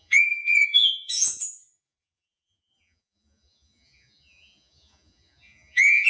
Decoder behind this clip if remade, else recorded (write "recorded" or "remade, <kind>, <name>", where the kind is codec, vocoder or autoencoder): remade, vocoder, Vocos